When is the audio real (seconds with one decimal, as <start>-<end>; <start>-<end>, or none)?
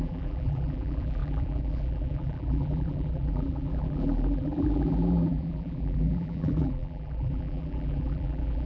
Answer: none